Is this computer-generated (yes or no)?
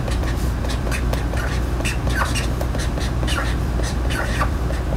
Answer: yes